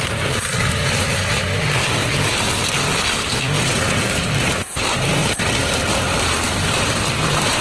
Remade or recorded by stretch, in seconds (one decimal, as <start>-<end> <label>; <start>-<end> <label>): 0.0-2.0 remade; 2.0-3.6 recorded; 3.6-5.2 remade; 5.2-5.9 recorded; 5.9-7.6 remade